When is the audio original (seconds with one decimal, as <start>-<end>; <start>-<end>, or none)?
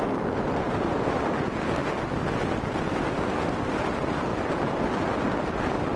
0.0-6.0